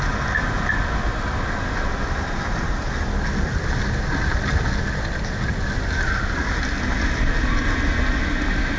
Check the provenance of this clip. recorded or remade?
recorded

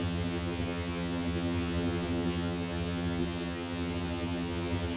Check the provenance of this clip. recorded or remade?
remade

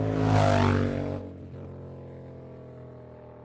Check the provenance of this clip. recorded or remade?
recorded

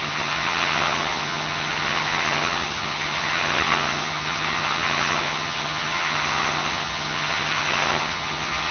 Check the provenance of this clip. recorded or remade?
remade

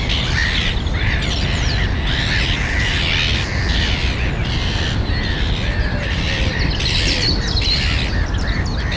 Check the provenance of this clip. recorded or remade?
recorded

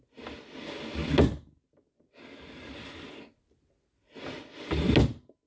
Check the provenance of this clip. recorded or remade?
recorded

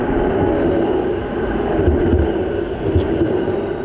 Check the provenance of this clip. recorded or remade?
recorded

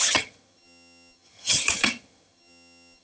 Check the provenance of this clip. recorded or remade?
remade